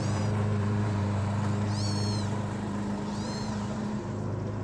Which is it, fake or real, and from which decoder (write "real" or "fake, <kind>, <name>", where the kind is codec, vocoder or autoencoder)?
fake, vocoder, BigVGAN v2